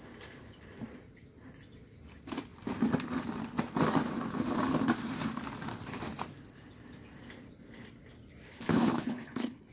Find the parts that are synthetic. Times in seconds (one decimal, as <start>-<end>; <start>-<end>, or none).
8.5-9.7